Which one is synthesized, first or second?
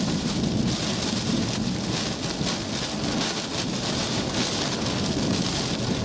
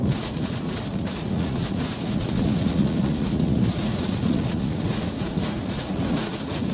second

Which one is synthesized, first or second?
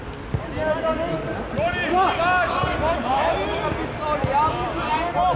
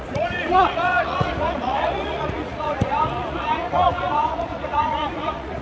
second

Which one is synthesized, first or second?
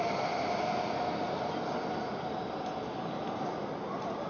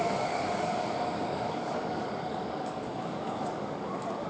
second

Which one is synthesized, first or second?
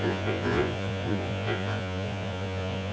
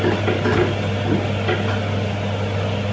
first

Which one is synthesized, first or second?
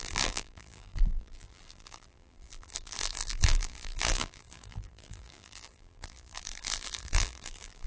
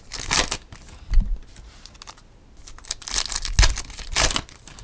first